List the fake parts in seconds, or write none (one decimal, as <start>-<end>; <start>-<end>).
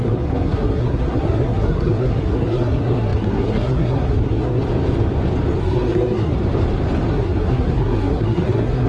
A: 0.0-4.6; 5.6-6.3; 7.1-8.9